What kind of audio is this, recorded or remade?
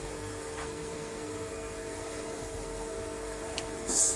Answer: remade